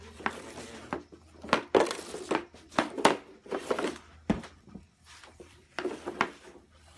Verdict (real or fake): real